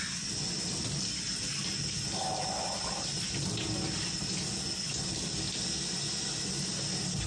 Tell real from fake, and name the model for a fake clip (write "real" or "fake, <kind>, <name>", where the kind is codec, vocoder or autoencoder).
real